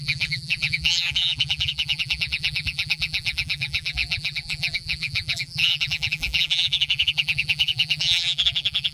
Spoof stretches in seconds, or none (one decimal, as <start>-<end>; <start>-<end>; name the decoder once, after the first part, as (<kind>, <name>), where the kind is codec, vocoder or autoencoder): 0.0-8.9 (vocoder, BigVGAN v2)